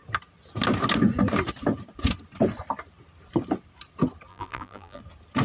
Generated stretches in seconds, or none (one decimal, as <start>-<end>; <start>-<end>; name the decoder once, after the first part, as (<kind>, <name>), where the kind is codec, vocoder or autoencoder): 4.3-5.0 (vocoder, BigVGAN v2)